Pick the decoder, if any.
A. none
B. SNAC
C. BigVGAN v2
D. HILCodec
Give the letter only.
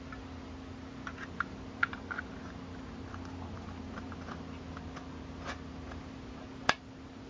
A